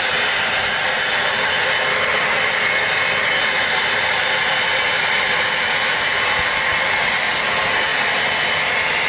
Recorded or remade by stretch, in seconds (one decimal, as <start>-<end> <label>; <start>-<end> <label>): 0.0-9.1 recorded

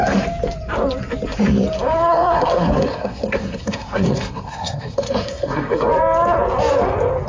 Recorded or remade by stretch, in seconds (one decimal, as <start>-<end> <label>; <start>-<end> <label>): 0.0-2.1 recorded; 2.1-5.9 remade; 5.9-7.3 recorded

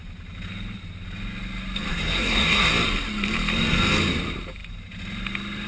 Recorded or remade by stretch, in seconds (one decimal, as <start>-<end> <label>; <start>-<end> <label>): 0.0-1.9 recorded; 1.9-2.7 remade; 2.7-5.7 recorded

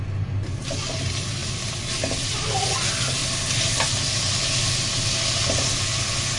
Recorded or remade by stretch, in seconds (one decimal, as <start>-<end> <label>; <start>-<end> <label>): 0.0-6.4 recorded

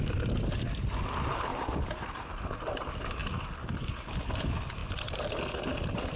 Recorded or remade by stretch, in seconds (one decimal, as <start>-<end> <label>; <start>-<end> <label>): 0.0-6.2 recorded

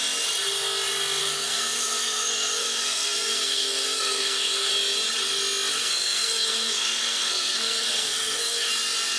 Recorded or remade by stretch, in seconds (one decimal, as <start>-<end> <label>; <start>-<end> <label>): 0.0-1.2 recorded; 1.2-4.7 remade; 4.7-5.8 recorded; 5.8-8.7 remade; 8.7-9.2 recorded